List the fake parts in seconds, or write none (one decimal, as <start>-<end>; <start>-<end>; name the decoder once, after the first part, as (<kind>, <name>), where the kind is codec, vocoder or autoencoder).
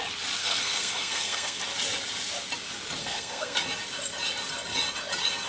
0.4-1.6 (codec, SNAC); 3.0-3.6